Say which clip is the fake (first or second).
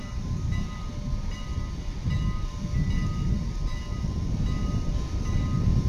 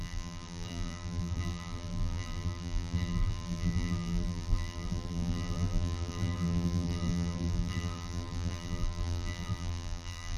second